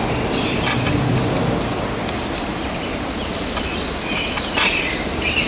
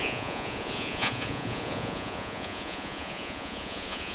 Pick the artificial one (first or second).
second